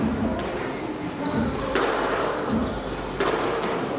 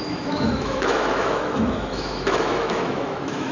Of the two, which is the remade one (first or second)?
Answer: second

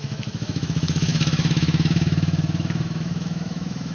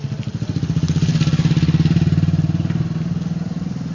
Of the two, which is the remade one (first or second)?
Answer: first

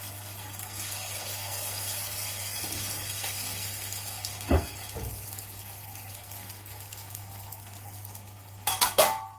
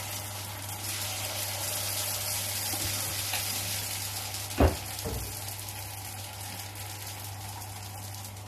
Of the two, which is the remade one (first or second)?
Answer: first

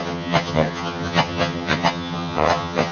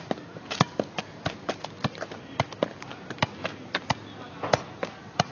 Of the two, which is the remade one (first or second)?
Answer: first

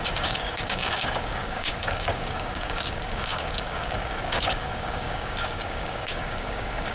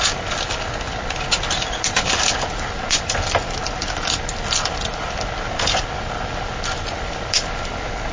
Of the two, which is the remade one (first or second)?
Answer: first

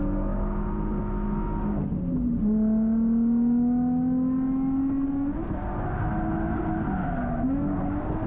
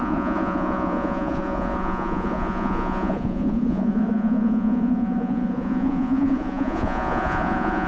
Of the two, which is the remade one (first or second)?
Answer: second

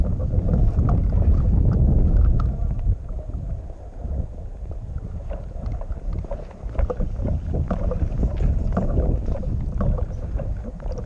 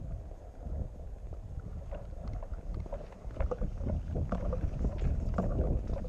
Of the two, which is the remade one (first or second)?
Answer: first